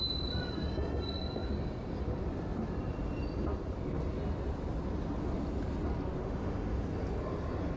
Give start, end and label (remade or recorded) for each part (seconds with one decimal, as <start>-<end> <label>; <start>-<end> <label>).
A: 0.0-6.2 recorded; 6.2-6.8 remade; 6.8-7.8 recorded

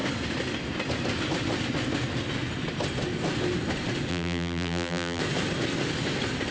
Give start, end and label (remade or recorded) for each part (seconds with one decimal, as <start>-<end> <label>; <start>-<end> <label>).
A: 0.0-4.1 recorded; 4.1-5.2 remade; 5.2-6.5 recorded

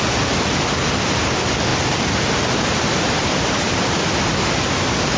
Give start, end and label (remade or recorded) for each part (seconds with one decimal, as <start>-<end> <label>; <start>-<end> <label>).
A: 0.0-5.2 recorded